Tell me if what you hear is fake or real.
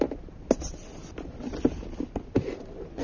real